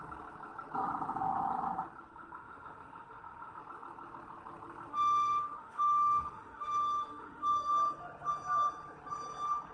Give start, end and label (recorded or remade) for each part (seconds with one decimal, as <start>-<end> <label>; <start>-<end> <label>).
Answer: 0.0-2.1 recorded; 2.1-3.6 remade; 3.6-4.9 recorded; 4.9-7.7 remade; 7.7-9.7 recorded